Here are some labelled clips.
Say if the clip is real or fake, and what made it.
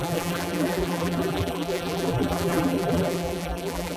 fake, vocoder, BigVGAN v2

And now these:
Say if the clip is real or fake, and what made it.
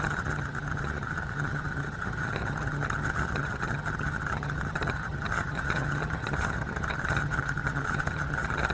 fake, vocoder, HiFi-GAN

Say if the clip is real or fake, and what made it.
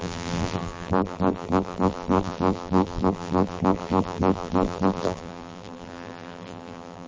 fake, vocoder, BigVGAN v2